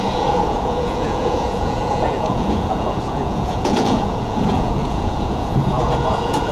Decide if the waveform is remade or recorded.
remade